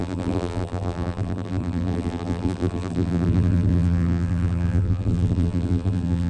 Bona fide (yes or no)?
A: no